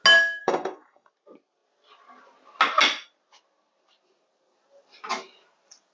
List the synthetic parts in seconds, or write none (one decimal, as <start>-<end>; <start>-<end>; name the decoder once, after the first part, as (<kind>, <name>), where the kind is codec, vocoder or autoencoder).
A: 0.4-1.1 (codec, DAC)